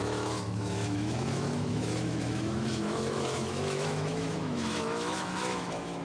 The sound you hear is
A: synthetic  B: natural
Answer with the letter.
A